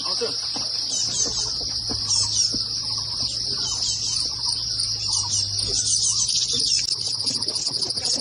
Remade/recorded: recorded